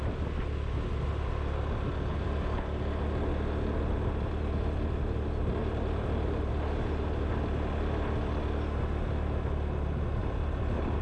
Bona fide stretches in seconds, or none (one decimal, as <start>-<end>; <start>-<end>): 0.0-5.6; 6.5-10.2